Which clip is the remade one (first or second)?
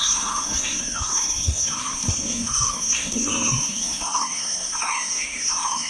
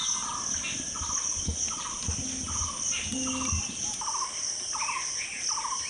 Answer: first